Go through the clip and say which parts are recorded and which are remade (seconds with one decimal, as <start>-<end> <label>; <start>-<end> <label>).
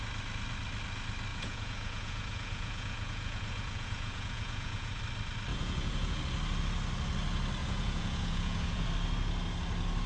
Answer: 0.0-1.3 recorded; 1.3-5.0 remade; 5.0-5.5 recorded; 5.5-6.2 remade; 6.2-7.6 recorded; 7.6-8.9 remade; 8.9-10.1 recorded